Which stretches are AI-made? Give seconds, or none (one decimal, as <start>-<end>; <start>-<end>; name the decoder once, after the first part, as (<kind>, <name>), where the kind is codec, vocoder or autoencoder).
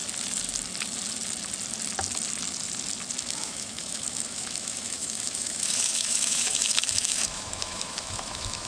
3.2-8.7 (autoencoder, DAC-VAE)